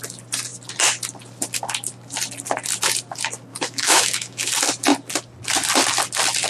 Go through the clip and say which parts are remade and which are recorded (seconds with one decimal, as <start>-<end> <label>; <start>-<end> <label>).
0.0-3.5 recorded; 3.5-4.5 remade; 4.5-6.5 recorded